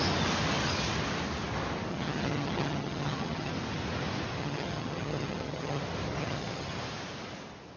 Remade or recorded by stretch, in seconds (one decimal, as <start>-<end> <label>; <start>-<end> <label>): 0.0-1.9 recorded; 1.9-3.5 remade; 3.5-4.4 recorded; 4.4-5.8 remade; 5.8-6.2 recorded; 6.2-6.8 remade; 6.8-7.8 recorded